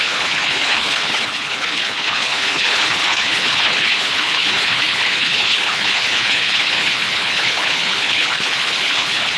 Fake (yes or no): yes